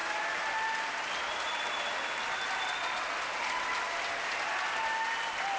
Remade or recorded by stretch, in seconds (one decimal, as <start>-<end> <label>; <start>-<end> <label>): 0.0-5.6 recorded